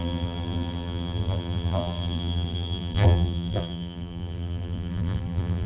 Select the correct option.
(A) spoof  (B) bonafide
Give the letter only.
A